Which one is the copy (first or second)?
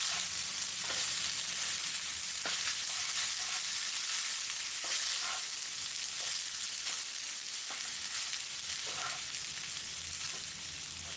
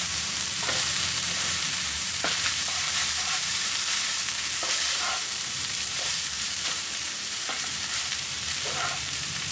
second